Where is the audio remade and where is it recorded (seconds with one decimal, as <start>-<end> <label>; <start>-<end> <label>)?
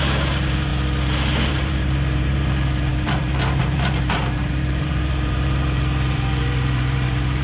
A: 0.0-0.7 remade; 0.7-1.5 recorded; 1.5-7.4 remade